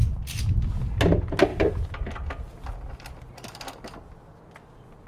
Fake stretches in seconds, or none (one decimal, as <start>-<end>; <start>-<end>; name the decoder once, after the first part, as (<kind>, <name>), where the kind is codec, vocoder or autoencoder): none